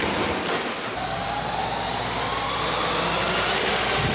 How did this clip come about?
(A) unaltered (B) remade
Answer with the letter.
A